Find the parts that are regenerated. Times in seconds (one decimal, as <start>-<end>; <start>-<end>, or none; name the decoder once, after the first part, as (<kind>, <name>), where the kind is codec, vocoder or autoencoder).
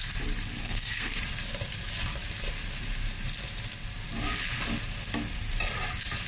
0.6-1.2 (codec, SNAC)